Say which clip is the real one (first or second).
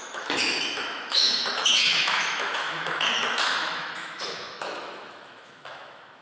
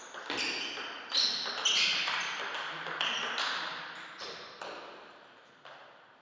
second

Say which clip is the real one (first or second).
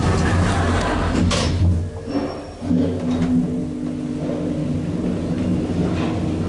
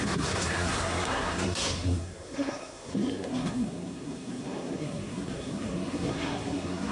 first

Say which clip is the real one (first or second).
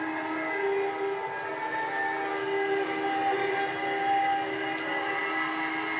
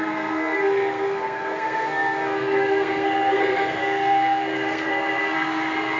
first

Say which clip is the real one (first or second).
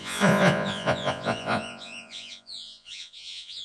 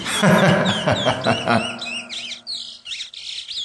second